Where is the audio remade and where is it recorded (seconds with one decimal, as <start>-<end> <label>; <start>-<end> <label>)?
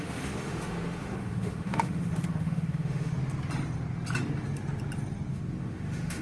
0.0-3.1 remade; 3.1-5.3 recorded; 5.3-6.2 remade